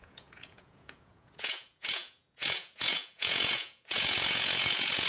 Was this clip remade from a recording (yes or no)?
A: yes